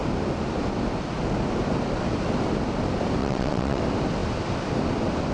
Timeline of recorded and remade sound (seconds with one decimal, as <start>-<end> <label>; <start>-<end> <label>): 0.0-3.2 recorded; 3.2-3.8 remade; 3.8-5.3 recorded